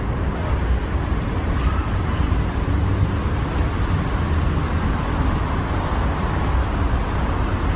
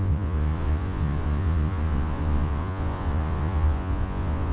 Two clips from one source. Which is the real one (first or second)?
first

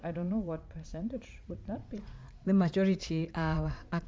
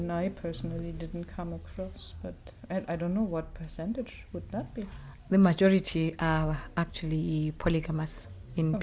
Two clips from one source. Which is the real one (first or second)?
second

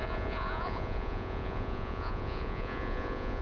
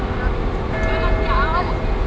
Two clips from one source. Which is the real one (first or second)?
second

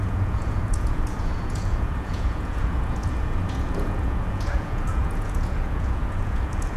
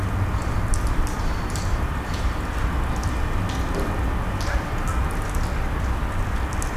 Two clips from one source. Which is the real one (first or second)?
second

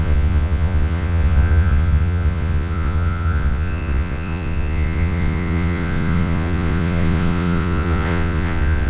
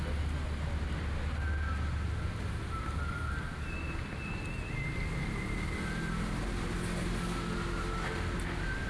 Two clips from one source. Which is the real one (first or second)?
second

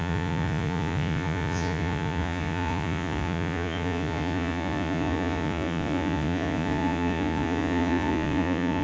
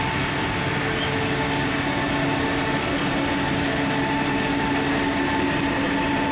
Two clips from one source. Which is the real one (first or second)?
second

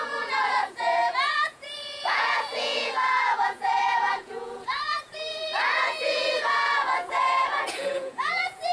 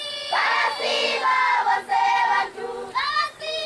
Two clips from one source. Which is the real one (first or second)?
second